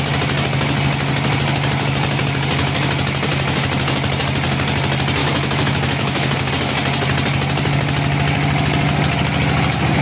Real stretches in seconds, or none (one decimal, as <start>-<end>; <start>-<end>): 0.0-5.2; 6.5-10.0